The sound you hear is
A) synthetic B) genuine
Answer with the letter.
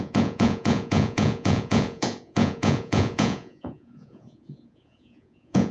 A